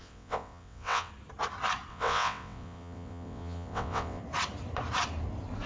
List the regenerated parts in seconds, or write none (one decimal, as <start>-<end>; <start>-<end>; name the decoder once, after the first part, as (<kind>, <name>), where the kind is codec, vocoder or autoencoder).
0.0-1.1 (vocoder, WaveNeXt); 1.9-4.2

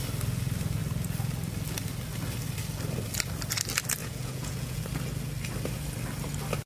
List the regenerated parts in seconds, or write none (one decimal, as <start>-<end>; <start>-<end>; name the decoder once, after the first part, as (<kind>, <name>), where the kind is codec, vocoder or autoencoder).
4.0-4.8 (vocoder, Vocos)

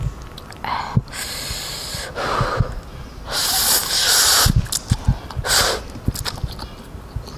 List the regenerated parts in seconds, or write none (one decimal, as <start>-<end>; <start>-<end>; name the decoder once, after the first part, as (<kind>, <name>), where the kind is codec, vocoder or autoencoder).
none